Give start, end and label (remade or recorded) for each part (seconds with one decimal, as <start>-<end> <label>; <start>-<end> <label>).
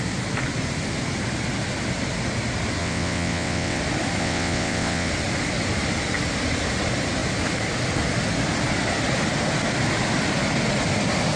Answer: 0.0-2.8 recorded; 2.8-3.8 remade; 3.8-4.2 recorded; 4.2-5.1 remade; 5.1-11.4 recorded